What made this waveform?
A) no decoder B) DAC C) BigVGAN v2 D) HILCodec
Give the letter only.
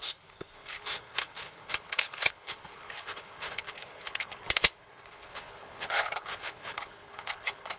D